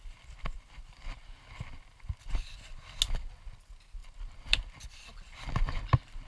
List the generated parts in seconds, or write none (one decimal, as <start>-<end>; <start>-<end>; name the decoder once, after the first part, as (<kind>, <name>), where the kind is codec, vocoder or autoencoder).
none